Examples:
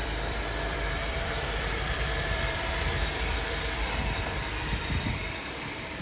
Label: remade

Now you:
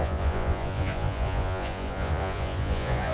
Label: remade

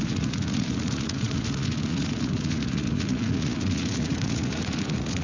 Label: remade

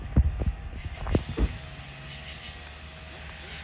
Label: recorded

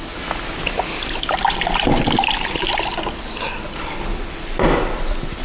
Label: remade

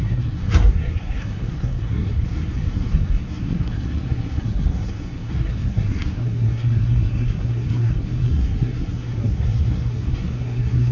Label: remade